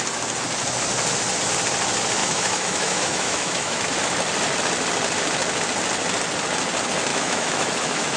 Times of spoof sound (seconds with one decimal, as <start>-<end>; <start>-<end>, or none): 2.2-3.9; 7.1-8.2